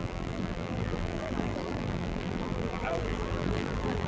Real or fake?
fake